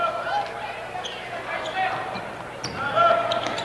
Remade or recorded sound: recorded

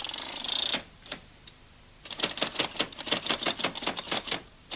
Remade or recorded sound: recorded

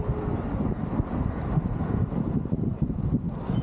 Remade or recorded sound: remade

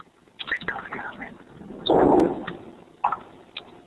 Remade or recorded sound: recorded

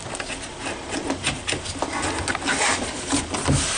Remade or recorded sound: recorded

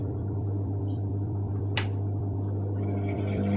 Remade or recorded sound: remade